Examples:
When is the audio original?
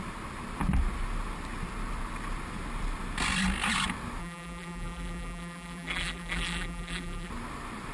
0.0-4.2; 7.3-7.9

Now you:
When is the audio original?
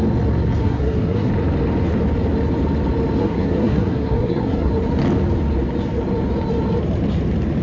0.0-0.6; 1.3-3.2; 4.7-7.6